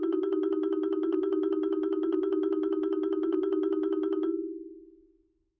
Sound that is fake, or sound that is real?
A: fake